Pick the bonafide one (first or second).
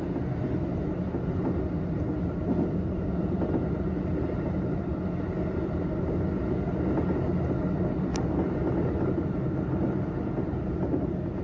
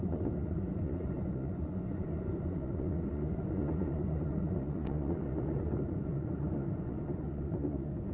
first